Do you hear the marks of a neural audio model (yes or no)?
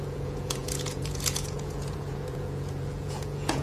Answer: yes